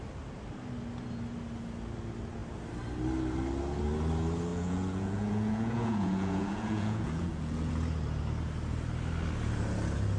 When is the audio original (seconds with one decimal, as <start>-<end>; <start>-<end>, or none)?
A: 0.0-4.5; 7.7-10.2